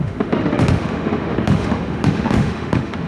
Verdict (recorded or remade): remade